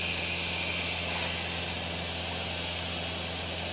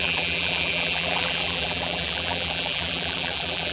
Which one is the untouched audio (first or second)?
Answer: first